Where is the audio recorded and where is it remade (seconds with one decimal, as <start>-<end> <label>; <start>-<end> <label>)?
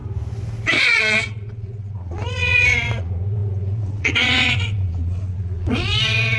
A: 0.0-0.7 recorded; 0.7-6.4 remade